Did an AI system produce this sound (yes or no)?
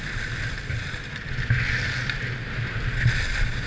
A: no